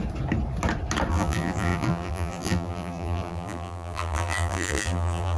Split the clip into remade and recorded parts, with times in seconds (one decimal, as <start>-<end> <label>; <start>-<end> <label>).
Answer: 0.0-1.1 recorded; 1.1-5.4 remade